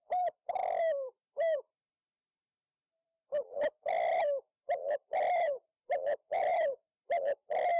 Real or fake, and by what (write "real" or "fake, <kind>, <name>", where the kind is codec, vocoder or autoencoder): fake, vocoder, BigVGAN v2